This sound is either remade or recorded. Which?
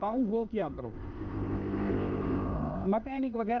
remade